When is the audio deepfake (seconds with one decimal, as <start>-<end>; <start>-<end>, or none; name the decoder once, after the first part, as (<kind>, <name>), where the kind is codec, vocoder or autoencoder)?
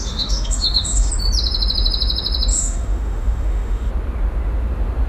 0.0-1.1 (autoencoder, DAC-VAE); 2.5-3.9